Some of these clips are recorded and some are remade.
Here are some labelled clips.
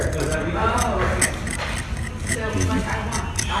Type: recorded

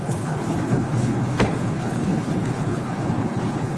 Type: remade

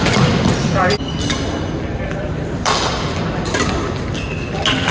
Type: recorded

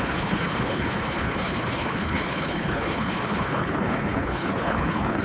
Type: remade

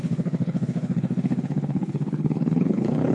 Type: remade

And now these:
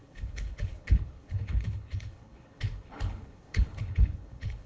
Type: remade